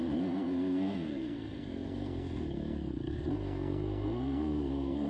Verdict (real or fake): fake